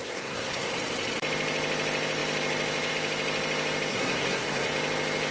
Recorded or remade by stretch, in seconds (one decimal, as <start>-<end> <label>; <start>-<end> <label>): 0.0-0.7 remade; 0.7-3.9 recorded; 3.9-4.7 remade; 4.7-5.3 recorded